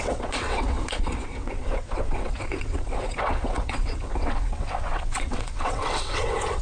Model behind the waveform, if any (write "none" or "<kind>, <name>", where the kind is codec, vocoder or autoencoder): vocoder, WaveNeXt